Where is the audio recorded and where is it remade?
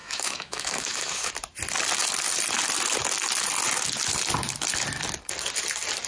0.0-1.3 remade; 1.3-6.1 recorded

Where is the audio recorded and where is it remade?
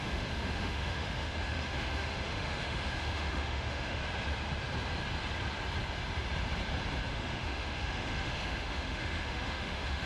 0.0-4.0 remade; 4.0-7.1 recorded; 7.1-10.1 remade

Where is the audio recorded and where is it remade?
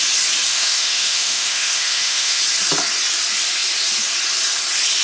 0.0-0.5 recorded; 0.5-2.4 remade; 2.4-5.0 recorded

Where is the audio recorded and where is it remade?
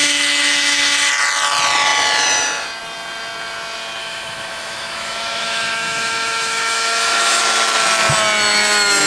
0.0-1.1 remade; 1.1-4.0 recorded; 4.0-7.4 remade; 7.4-9.1 recorded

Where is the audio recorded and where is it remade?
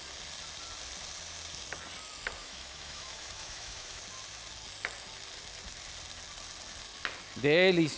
0.0-2.4 recorded; 2.4-4.0 remade; 4.0-8.0 recorded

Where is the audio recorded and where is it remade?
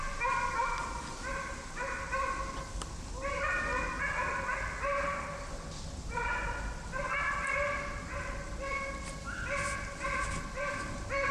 0.0-11.3 recorded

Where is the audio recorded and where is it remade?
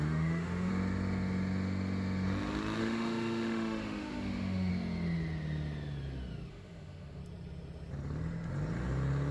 0.0-0.7 remade; 0.7-2.8 recorded; 2.8-4.7 remade; 4.7-6.5 recorded; 6.5-7.2 remade; 7.2-9.3 recorded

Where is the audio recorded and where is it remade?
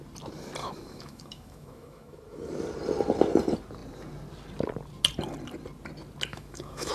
0.0-0.6 recorded; 0.6-2.5 remade; 2.5-6.3 recorded; 6.3-6.9 remade